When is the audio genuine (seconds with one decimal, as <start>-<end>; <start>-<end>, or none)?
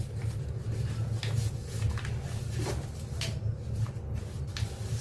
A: 0.0-5.0